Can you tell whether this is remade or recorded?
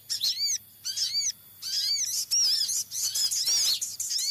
recorded